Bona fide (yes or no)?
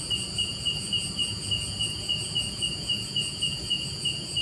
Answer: no